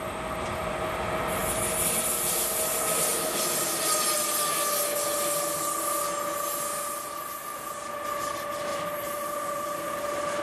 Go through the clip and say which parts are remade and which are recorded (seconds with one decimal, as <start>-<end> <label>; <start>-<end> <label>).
0.0-8.7 recorded; 8.7-10.0 remade; 10.0-10.4 recorded